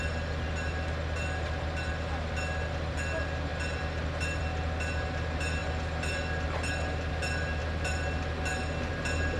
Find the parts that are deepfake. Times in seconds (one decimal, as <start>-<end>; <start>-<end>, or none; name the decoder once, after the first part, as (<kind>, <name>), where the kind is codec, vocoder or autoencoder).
none